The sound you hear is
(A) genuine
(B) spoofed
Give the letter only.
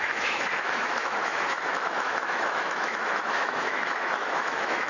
B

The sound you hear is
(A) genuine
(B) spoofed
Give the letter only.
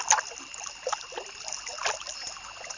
A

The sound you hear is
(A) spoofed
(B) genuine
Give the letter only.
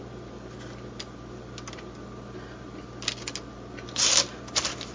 B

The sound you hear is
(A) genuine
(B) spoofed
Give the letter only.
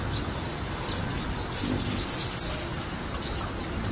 A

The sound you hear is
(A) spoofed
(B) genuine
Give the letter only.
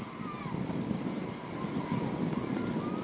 B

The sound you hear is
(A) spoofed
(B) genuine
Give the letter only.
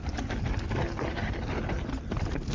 B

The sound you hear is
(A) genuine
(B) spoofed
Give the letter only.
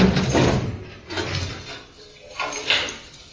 A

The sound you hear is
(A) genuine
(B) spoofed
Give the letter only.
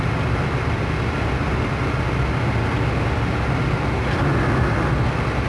A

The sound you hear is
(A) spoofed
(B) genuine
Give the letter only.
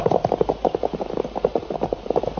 B